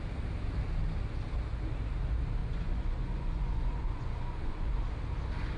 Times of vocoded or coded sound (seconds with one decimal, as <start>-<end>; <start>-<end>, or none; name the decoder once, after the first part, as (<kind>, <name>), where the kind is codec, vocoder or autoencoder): 2.4-4.9 (vocoder, Vocos)